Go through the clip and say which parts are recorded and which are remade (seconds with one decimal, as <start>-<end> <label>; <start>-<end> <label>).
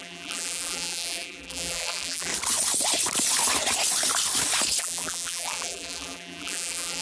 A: 0.0-2.3 remade; 2.3-4.8 recorded; 4.8-7.0 remade